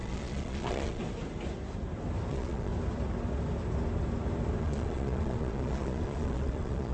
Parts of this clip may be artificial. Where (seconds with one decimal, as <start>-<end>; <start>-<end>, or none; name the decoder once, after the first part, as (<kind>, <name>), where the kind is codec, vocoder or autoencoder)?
0.0-1.0 (vocoder, Vocos); 2.3-2.7; 4.6-6.9